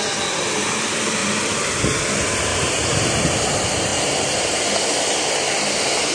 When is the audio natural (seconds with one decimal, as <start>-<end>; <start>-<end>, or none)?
0.0-2.5; 3.1-6.1